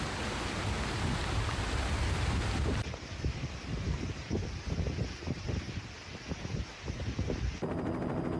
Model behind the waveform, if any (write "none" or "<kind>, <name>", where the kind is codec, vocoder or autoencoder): none